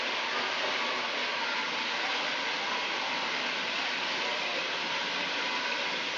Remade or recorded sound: recorded